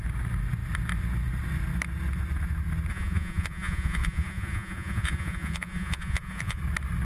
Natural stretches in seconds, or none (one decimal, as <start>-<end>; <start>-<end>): 0.0-2.9; 6.6-7.0